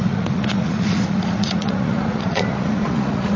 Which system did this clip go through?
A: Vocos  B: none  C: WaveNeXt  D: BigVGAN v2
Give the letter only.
A